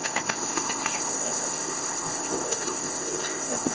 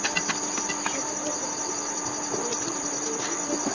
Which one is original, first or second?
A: second